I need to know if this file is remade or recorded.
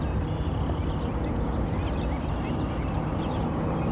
recorded